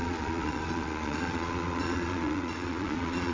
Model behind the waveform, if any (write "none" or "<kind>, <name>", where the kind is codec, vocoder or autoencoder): vocoder, Vocos